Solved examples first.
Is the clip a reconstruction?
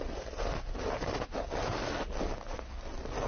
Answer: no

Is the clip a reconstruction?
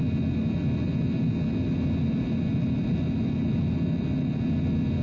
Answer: no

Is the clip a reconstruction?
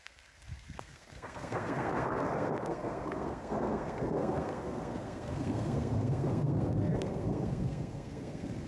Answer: yes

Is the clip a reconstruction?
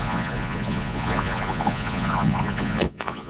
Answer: yes